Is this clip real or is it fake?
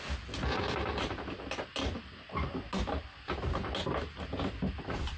real